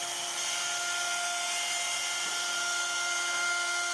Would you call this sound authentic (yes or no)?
yes